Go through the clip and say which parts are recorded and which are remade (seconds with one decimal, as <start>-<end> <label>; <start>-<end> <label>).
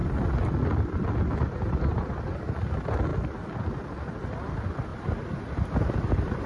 0.0-2.2 remade; 2.2-4.9 recorded; 4.9-5.5 remade; 5.5-6.5 recorded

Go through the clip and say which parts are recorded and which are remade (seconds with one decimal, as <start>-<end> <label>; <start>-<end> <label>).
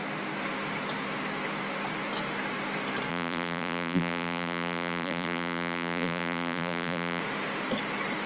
0.0-3.1 recorded; 3.1-7.2 remade; 7.2-8.3 recorded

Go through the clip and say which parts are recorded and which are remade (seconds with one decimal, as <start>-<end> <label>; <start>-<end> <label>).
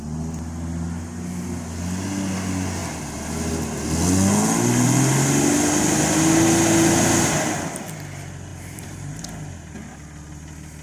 0.0-8.5 recorded; 8.5-9.2 remade; 9.2-10.8 recorded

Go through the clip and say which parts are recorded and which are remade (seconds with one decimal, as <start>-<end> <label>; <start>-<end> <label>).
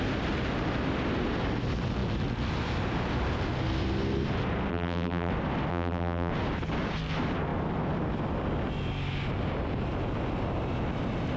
0.0-4.7 recorded; 4.7-5.3 remade; 5.3-5.7 recorded; 5.7-6.3 remade; 6.3-11.4 recorded